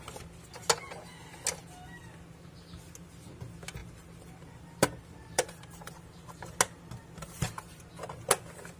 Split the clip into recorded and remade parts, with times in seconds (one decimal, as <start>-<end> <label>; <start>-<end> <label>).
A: 0.0-3.8 recorded; 3.8-5.9 remade; 5.9-7.0 recorded; 7.0-7.8 remade; 7.8-8.8 recorded